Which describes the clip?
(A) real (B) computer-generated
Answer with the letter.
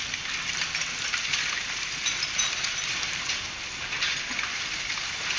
A